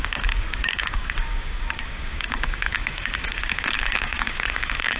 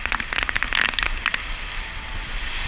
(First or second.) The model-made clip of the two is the first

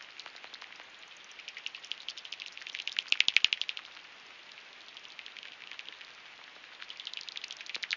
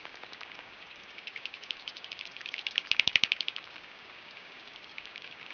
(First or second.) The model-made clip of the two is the second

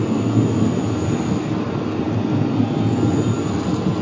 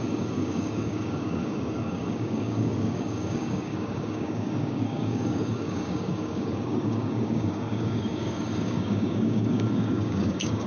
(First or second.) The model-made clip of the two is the second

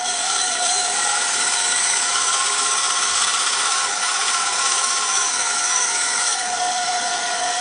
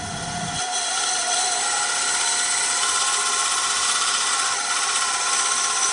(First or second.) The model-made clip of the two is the first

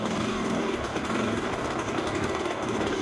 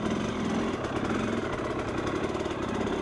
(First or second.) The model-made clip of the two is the first